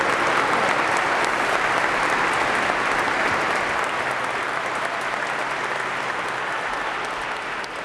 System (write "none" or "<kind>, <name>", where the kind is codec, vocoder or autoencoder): none